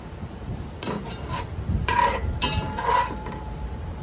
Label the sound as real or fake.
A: fake